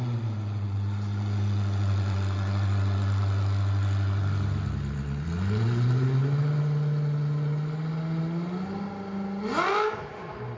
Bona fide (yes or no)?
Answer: yes